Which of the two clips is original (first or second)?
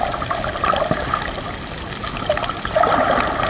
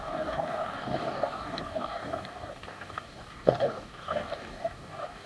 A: first